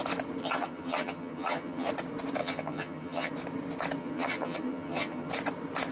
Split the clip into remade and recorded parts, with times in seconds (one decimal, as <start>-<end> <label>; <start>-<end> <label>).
0.0-0.4 recorded; 0.4-1.9 remade; 1.9-2.4 recorded; 2.4-3.3 remade; 3.3-4.0 recorded; 4.0-5.3 remade; 5.3-5.9 recorded